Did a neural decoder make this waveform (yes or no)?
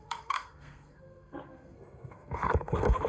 yes